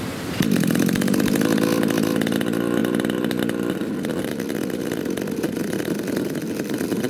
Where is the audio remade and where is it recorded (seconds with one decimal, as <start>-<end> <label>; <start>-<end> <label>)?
0.0-7.1 recorded